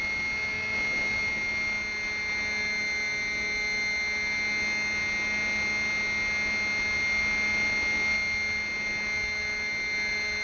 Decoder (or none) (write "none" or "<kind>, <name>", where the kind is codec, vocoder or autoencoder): none